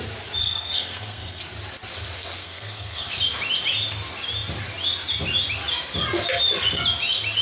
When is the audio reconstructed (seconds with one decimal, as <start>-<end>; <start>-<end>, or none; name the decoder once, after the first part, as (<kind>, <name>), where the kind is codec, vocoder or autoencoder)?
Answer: 0.4-1.4 (codec, SNAC); 2.4-3.2